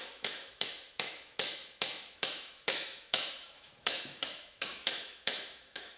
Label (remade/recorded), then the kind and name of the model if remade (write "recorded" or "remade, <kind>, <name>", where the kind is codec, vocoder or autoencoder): remade, autoencoder, DAC-VAE